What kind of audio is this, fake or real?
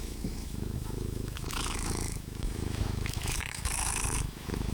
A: fake